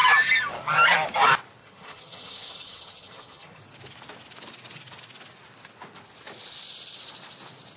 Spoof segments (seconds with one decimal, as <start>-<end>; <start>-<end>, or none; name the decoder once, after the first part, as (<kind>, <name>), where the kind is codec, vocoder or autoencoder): 1.6-3.6 (vocoder, HiFi-GAN)